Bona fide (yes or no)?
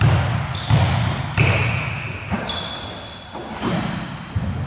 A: yes